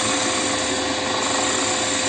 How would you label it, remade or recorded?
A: recorded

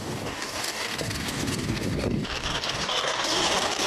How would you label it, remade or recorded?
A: remade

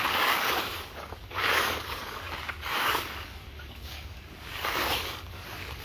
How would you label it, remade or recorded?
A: remade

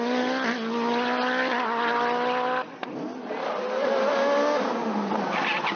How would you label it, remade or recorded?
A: recorded